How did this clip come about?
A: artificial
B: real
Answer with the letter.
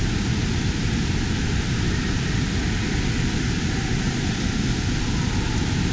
B